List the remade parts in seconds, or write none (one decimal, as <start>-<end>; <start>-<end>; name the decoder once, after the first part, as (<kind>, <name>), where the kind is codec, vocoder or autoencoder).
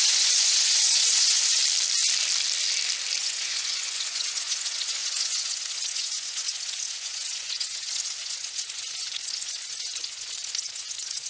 0.0-1.6 (vocoder, Vocos); 3.2-11.3